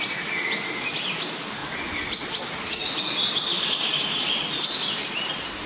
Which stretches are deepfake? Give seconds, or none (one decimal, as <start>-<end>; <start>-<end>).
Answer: none